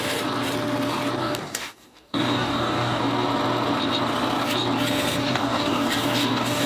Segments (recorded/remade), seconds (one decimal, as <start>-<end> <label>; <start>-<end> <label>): 0.0-1.2 recorded; 1.2-3.0 remade; 3.0-5.2 recorded; 5.2-6.7 remade